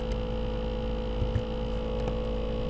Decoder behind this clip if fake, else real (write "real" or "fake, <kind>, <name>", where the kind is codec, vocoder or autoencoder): real